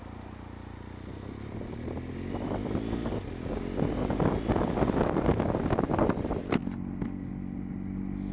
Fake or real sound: real